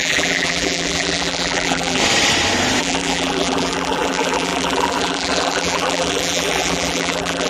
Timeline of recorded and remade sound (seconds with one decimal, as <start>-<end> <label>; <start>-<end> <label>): 0.0-2.0 remade; 2.0-2.8 recorded; 2.8-7.5 remade